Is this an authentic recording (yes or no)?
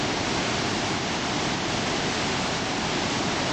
yes